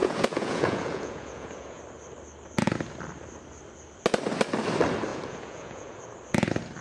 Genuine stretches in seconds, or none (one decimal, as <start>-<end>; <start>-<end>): 1.8-5.1; 6.0-6.8